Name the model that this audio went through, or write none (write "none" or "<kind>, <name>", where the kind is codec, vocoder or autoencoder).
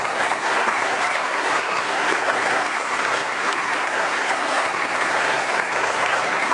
codec, SNAC